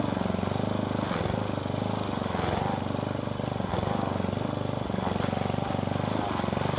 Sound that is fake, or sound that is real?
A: real